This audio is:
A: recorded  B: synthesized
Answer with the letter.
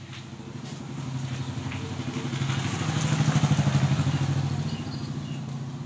A